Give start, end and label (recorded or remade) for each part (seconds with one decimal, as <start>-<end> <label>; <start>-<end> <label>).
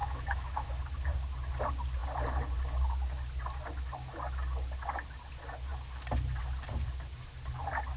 0.0-0.7 remade; 0.7-8.0 recorded